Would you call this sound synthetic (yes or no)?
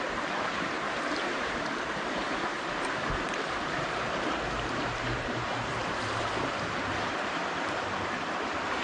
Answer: yes